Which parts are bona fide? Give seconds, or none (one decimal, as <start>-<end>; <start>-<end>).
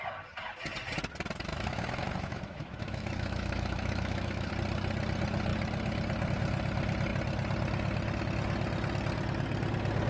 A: 0.0-1.5; 4.5-10.1